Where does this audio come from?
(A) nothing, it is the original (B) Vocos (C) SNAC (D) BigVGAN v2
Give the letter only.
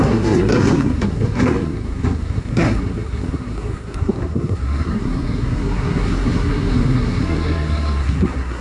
C